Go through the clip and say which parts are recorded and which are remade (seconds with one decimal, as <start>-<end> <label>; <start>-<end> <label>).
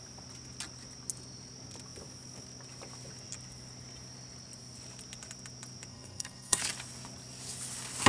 0.0-5.9 recorded; 5.9-6.6 remade; 6.6-8.1 recorded